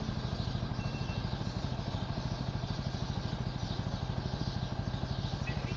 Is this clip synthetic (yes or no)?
no